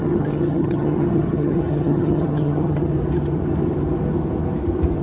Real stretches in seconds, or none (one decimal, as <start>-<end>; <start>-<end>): 2.9-5.0